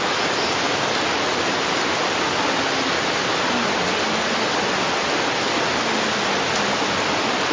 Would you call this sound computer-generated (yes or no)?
no